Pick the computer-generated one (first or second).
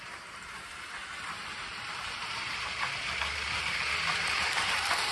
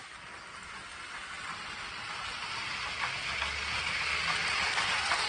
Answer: first